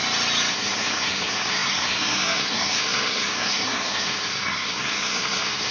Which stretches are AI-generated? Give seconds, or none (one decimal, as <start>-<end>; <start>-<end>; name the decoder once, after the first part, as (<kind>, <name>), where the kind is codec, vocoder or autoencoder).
0.5-5.7 (codec, SNAC)